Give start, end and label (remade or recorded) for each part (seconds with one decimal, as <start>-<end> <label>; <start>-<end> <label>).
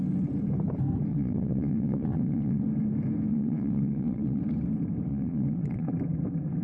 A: 0.0-1.1 recorded; 1.1-2.6 remade; 2.6-3.3 recorded; 3.3-4.4 remade; 4.4-5.1 recorded; 5.1-5.9 remade; 5.9-6.6 recorded